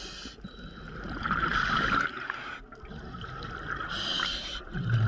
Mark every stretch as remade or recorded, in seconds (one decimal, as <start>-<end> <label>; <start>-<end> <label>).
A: 0.0-5.1 recorded